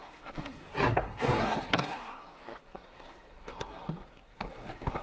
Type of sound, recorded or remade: remade